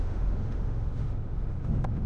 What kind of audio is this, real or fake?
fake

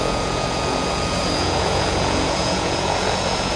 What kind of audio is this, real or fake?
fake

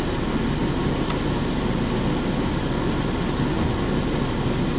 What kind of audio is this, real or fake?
real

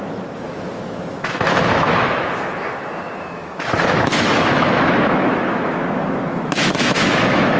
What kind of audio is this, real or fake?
fake